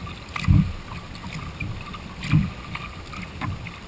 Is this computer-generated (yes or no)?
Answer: no